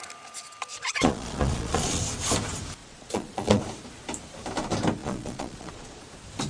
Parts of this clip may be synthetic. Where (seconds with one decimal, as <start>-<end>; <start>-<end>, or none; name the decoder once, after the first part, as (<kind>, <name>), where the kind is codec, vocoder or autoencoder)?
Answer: 0.7-2.0 (vocoder, Vocos); 2.8-3.6; 5.0-6.0